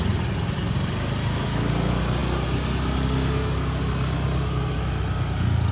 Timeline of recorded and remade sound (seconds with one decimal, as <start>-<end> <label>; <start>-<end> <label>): 0.0-5.7 recorded